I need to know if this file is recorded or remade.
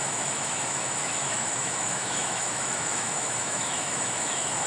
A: remade